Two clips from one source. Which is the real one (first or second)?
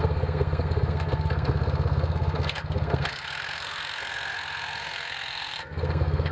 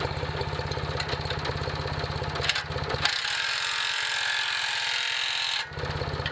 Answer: second